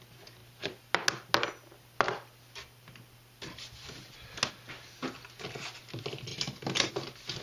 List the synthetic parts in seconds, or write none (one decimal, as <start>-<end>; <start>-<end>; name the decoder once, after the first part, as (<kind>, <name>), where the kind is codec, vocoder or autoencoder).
none